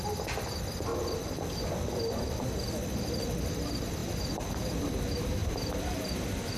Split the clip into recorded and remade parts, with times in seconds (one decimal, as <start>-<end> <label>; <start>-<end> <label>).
0.0-0.9 recorded; 0.9-1.6 remade; 1.6-4.0 recorded; 4.0-4.9 remade; 4.9-5.4 recorded; 5.4-6.1 remade; 6.1-6.6 recorded